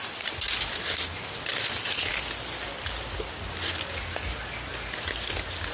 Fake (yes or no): no